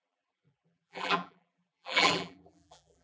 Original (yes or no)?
no